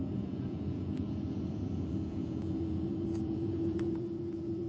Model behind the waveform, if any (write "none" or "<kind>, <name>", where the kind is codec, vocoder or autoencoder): vocoder, Vocos